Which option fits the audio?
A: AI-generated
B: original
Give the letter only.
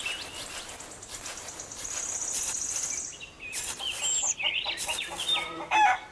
B